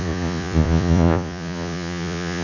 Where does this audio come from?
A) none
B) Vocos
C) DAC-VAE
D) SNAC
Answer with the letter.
B